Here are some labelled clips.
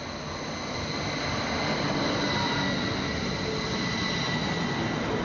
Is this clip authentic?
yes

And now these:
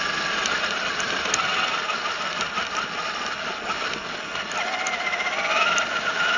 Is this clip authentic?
yes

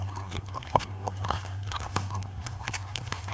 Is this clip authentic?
no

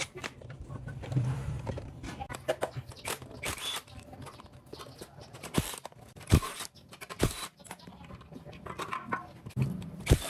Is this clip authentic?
no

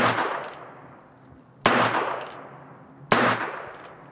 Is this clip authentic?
yes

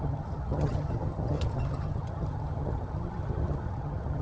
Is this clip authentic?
no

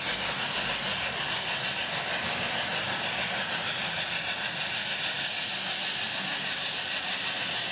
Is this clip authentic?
yes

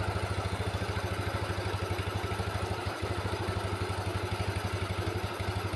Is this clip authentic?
yes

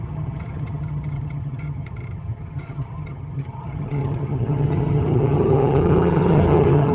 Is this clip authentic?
no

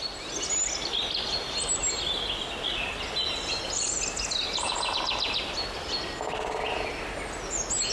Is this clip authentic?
yes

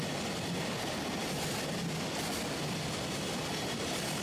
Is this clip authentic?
yes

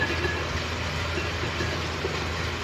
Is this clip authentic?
no